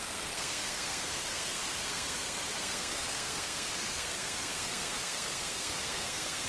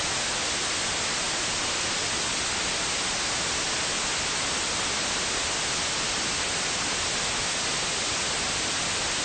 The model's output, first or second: first